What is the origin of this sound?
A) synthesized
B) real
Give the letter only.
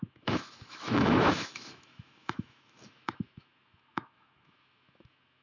A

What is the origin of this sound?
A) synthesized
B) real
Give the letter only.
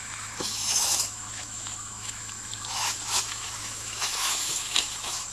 A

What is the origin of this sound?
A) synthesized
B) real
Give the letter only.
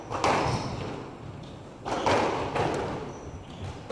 B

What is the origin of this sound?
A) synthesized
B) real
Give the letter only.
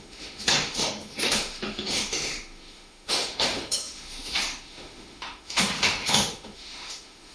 A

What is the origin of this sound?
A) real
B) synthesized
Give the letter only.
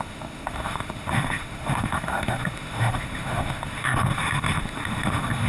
B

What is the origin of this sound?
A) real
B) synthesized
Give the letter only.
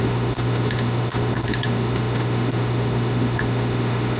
B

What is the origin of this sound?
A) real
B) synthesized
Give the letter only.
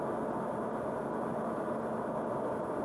A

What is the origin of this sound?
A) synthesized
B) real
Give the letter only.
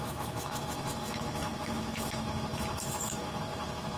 A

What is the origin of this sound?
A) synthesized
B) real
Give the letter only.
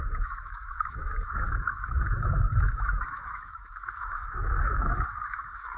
A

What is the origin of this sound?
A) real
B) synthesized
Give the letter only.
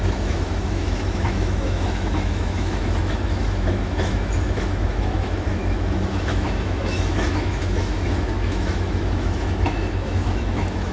B